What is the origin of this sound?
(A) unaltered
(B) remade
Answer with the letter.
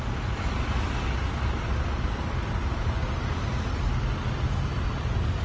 A